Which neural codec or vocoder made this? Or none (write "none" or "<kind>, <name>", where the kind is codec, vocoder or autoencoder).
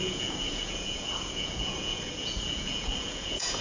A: vocoder, Vocos